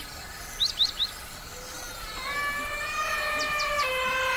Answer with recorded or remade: recorded